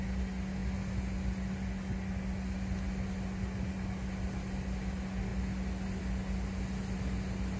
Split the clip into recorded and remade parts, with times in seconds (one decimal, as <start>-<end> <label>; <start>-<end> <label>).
0.0-7.6 recorded